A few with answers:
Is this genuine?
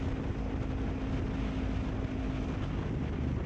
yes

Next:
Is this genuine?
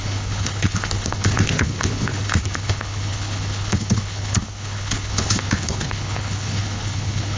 no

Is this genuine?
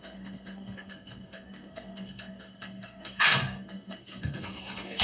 no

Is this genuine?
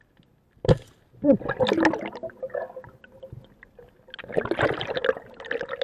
yes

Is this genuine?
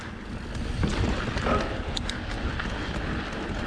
yes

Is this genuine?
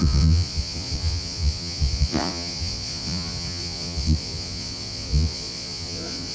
no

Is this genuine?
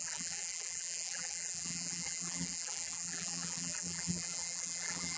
no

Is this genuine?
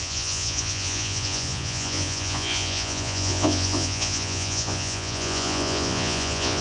no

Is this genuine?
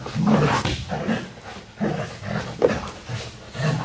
yes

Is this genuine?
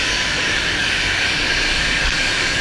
no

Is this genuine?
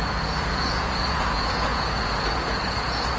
no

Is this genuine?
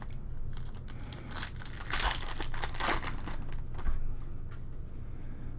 yes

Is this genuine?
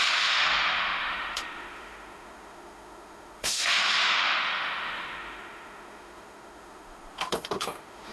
no